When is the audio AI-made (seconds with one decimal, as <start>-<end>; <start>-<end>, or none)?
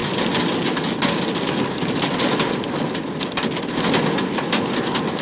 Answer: none